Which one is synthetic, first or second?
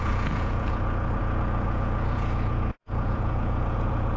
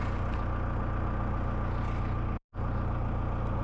first